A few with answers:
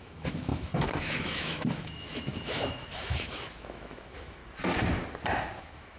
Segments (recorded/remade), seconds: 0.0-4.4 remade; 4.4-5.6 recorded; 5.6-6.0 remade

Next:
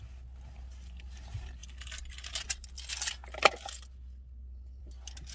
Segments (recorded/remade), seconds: 0.0-5.3 recorded

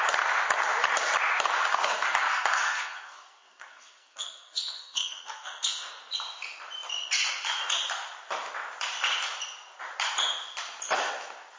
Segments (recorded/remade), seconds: 0.0-1.8 recorded; 1.8-6.0 remade; 6.0-11.6 recorded

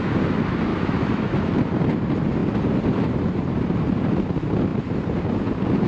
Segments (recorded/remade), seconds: 0.0-0.7 recorded; 0.7-1.6 remade; 1.6-5.9 recorded

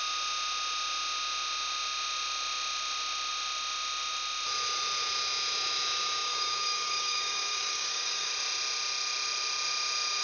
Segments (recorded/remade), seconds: 0.0-6.3 recorded; 6.3-8.3 remade; 8.3-10.2 recorded

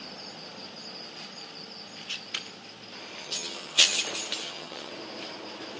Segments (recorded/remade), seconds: 0.0-3.2 recorded; 3.2-4.0 remade; 4.0-4.4 recorded; 4.4-4.9 remade; 4.9-5.8 recorded

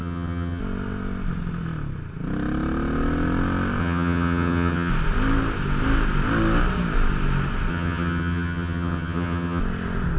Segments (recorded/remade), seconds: 0.0-0.6 remade; 0.6-3.8 recorded; 3.8-4.9 remade; 4.9-7.7 recorded; 7.7-9.6 remade; 9.6-10.2 recorded